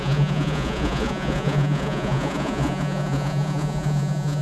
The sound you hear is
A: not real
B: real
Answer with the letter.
A